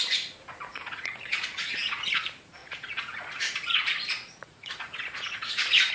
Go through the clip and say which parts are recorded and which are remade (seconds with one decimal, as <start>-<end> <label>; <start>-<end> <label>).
0.0-0.7 recorded; 0.7-2.0 remade; 2.0-2.6 recorded; 2.6-5.9 remade

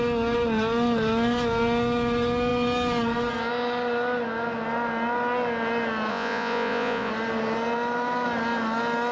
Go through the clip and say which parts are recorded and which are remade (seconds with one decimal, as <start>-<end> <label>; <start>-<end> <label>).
0.0-6.1 recorded; 6.1-7.1 remade; 7.1-9.1 recorded

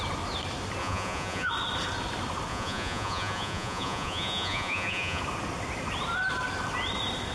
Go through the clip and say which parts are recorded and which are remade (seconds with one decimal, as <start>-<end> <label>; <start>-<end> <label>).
0.0-0.8 recorded; 0.8-1.5 remade; 1.5-2.5 recorded; 2.5-5.2 remade; 5.2-7.3 recorded

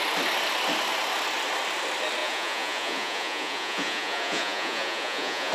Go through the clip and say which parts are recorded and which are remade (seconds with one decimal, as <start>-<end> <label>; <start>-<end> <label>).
0.0-2.2 recorded; 2.2-5.5 remade